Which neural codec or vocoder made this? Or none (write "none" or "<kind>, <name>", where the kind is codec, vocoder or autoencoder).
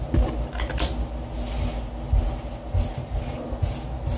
none